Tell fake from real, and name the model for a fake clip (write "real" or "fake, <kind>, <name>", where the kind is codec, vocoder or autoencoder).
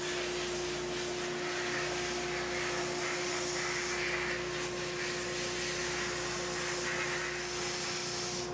real